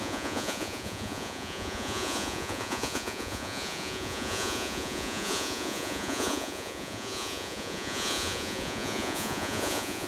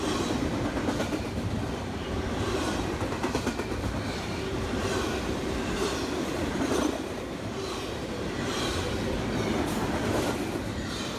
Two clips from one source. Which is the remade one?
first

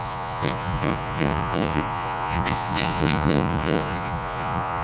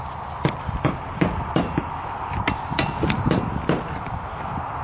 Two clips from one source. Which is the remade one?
first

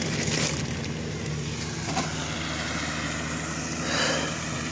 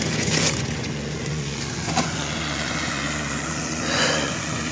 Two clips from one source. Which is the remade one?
second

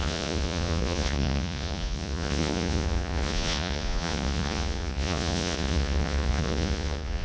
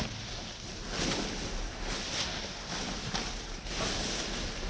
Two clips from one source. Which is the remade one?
first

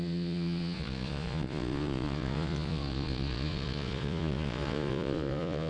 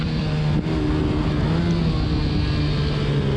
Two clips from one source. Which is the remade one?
first